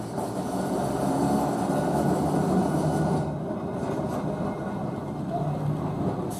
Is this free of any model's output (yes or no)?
yes